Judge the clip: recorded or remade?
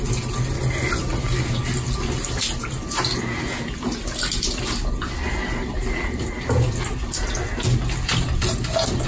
recorded